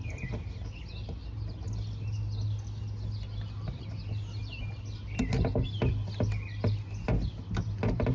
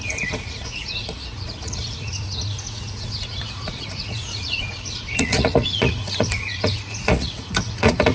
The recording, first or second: first